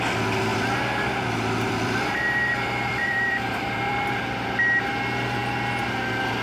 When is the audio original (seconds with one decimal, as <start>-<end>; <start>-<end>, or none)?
0.0-0.5; 4.2-6.4